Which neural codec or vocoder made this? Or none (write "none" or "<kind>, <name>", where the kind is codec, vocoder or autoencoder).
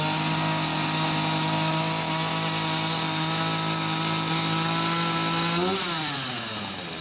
none